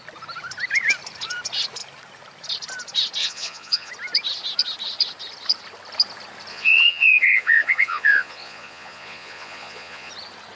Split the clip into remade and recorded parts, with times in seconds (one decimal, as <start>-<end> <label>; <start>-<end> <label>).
0.0-3.2 recorded; 3.2-3.9 remade; 3.9-6.5 recorded; 6.5-10.1 remade; 10.1-10.6 recorded